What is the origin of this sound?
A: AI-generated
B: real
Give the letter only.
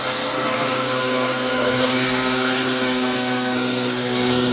A